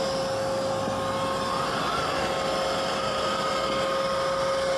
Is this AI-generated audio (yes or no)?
no